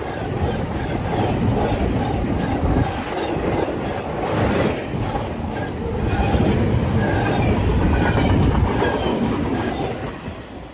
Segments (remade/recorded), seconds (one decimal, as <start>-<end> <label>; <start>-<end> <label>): 0.0-9.1 recorded; 9.1-9.7 remade; 9.7-10.7 recorded